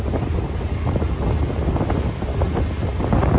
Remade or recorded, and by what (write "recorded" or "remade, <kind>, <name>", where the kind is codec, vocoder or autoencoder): recorded